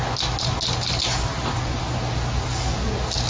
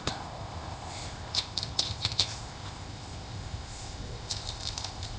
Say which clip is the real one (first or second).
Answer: first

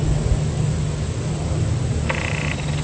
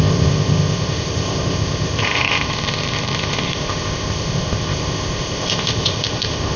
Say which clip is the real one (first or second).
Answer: first